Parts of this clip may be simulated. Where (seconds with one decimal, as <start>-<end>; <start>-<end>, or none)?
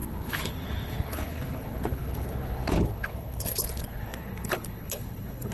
0.0-5.5